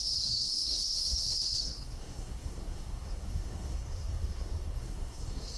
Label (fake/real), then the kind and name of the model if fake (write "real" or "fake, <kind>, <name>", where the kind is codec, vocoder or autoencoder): fake, codec, SNAC